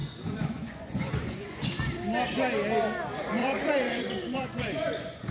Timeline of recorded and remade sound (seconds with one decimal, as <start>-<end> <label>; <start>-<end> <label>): 0.0-1.7 remade; 1.7-3.4 recorded; 3.4-5.3 remade